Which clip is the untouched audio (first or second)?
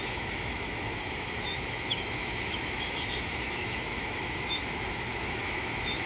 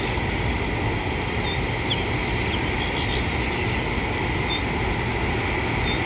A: second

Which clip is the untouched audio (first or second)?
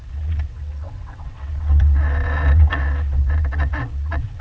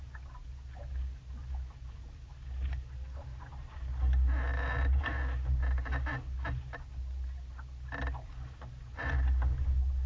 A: second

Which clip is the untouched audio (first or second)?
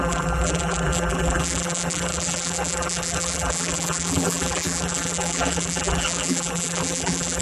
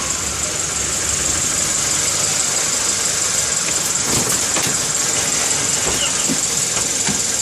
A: second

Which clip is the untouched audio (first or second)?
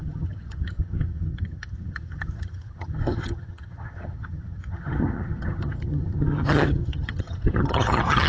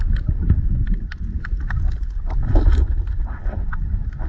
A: second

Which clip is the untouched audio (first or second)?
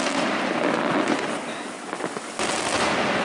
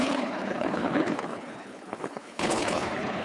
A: first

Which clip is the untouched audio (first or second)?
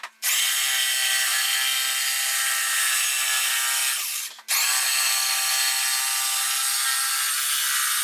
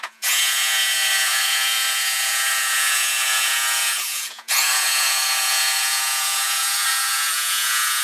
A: first